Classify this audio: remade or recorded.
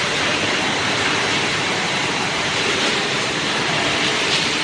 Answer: remade